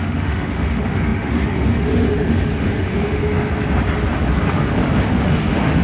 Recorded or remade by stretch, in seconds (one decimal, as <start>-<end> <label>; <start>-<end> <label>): 0.0-3.2 remade; 3.2-4.5 recorded; 4.5-5.8 remade